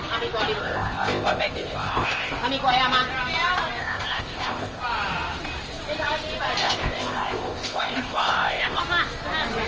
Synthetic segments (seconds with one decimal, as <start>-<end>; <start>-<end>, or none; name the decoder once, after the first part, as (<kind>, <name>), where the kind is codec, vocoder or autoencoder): 0.6-2.3 (codec, ZipCodec); 3.8-4.8; 6.6-8.8